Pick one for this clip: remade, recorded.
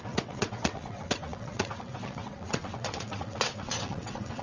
remade